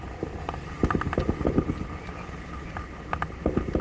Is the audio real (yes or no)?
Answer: no